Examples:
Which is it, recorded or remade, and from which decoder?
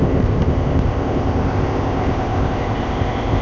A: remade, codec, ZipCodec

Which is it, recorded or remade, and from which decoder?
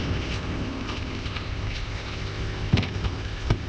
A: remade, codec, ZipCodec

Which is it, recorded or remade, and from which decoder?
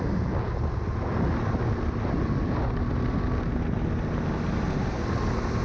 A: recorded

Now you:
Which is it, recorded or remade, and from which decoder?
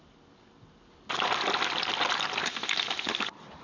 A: recorded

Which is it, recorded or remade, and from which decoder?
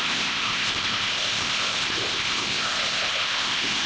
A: remade, codec, ZipCodec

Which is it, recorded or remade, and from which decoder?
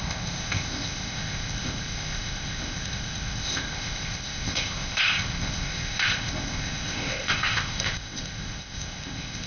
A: remade, codec, ZipCodec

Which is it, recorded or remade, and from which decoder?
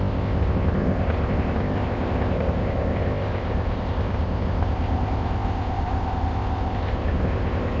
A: remade, codec, ZipCodec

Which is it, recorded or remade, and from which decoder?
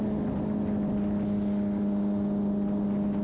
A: recorded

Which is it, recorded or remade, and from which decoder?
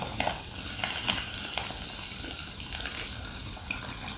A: recorded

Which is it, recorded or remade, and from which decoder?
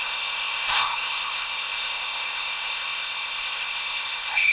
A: remade, codec, ZipCodec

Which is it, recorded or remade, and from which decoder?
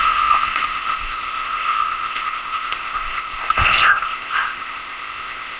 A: remade, codec, ZipCodec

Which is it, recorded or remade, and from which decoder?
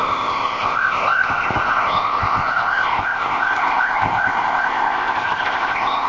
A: remade, codec, ZipCodec